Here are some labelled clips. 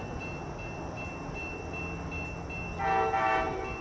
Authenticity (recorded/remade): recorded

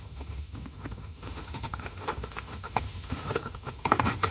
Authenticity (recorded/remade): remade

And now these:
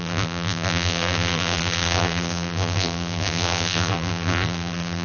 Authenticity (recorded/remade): remade